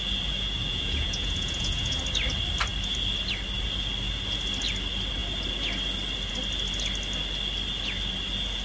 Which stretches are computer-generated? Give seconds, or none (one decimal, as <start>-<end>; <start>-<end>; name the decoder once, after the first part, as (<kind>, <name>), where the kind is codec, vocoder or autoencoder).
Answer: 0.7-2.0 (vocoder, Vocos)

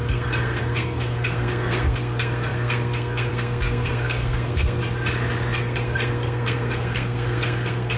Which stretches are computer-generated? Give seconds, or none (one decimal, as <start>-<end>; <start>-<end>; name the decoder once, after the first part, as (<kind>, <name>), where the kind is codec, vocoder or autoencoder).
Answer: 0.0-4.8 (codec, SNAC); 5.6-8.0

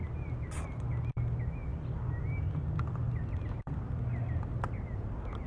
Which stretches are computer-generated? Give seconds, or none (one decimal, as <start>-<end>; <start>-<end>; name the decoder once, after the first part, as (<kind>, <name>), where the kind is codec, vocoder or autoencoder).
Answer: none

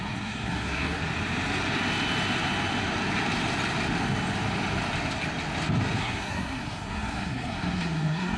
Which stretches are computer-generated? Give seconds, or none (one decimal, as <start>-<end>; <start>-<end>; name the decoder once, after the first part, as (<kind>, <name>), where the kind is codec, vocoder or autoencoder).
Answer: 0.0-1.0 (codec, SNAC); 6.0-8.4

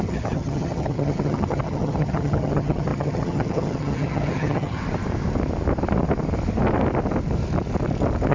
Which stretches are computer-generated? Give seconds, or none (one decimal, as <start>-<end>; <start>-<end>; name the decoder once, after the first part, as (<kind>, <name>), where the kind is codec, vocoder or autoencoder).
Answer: 0.0-4.8 (vocoder, HiFi-GAN)